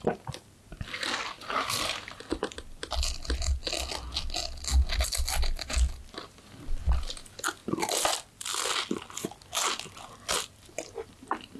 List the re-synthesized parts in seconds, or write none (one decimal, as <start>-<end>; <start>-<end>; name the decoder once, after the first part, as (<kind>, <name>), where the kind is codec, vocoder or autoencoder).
none